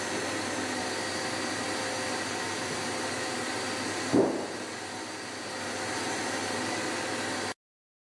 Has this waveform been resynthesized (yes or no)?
no